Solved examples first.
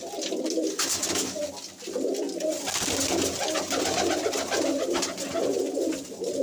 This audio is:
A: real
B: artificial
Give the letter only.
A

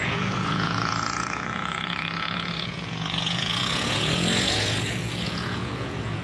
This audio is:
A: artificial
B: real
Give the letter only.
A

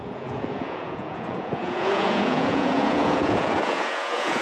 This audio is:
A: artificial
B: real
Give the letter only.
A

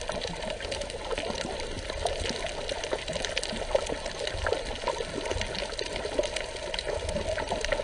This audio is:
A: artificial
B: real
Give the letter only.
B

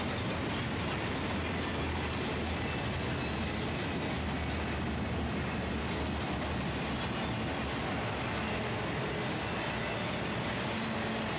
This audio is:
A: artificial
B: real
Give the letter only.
B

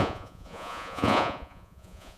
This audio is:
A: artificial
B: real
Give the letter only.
A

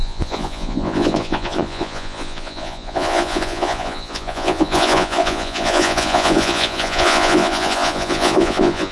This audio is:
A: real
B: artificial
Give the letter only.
B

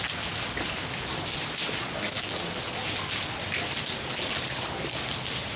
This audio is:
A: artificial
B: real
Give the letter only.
B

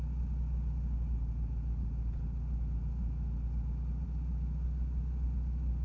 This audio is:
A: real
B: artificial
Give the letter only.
A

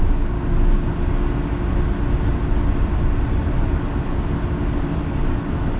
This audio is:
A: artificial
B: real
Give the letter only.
B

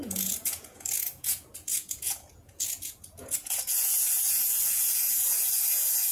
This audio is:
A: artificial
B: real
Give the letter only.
A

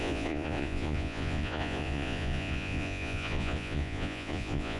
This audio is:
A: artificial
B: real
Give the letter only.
A